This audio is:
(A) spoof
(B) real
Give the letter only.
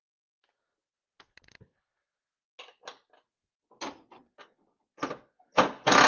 B